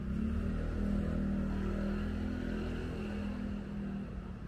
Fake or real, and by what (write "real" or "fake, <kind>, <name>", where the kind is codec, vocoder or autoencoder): real